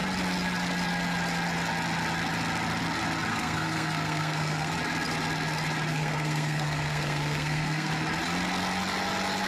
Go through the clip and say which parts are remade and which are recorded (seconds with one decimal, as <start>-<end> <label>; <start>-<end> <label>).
0.0-3.3 recorded; 3.3-4.7 remade; 4.7-5.9 recorded; 5.9-7.9 remade; 7.9-9.5 recorded